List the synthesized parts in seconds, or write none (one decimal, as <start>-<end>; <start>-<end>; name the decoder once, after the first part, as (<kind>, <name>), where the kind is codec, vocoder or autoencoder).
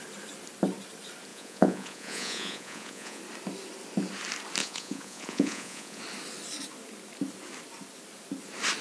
1.3-3.2 (vocoder, Vocos); 4.6-6.0